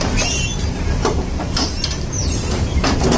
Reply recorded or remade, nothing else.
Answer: remade